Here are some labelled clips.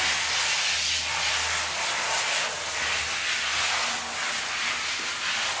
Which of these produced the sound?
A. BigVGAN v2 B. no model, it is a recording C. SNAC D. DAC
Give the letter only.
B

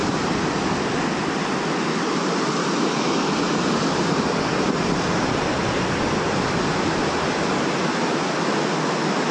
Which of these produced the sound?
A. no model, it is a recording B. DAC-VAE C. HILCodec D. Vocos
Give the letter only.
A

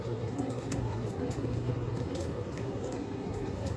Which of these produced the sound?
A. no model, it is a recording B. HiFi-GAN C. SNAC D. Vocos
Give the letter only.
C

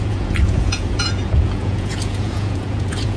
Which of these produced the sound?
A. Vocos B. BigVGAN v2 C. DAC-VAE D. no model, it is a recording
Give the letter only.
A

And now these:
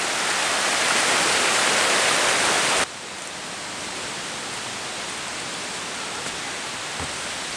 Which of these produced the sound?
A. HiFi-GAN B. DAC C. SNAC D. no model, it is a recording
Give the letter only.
D